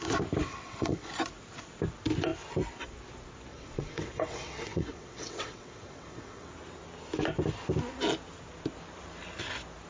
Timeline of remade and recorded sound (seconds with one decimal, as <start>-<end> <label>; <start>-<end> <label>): 0.0-0.4 recorded; 0.4-1.1 remade; 1.1-3.5 recorded; 3.5-6.5 remade; 6.5-9.9 recorded